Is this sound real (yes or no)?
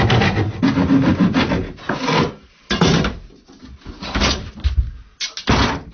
yes